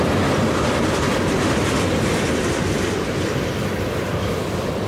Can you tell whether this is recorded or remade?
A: recorded